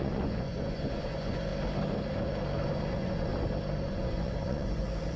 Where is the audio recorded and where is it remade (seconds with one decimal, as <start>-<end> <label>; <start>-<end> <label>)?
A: 0.0-1.5 remade; 1.5-2.7 recorded; 2.7-3.3 remade; 3.3-3.9 recorded; 3.9-5.2 remade

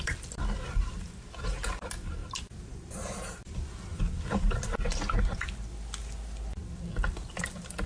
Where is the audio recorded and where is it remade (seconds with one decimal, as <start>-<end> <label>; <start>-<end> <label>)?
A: 0.0-7.9 recorded

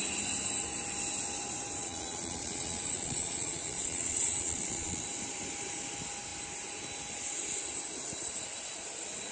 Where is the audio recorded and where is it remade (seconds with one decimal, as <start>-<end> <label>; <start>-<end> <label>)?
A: 0.0-1.8 recorded; 1.8-5.0 remade; 5.0-9.3 recorded